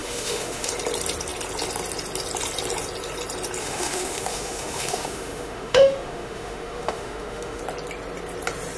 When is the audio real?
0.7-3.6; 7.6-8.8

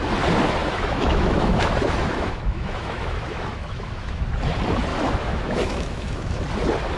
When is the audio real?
0.0-0.6; 4.2-4.9; 6.4-7.0

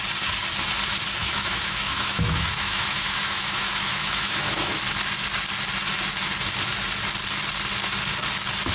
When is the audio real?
0.0-1.2; 4.8-8.7

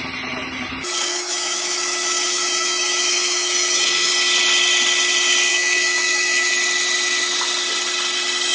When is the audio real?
0.0-1.1; 4.1-5.5; 6.5-8.5

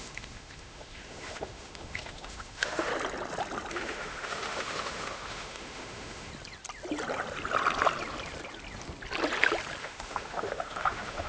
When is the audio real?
2.9-3.7; 6.3-9.8

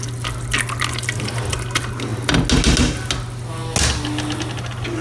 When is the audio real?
0.0-5.0

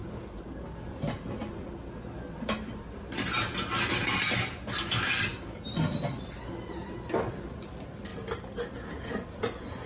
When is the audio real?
0.0-9.9